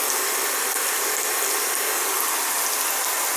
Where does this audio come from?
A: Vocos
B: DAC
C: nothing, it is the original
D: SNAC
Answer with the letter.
C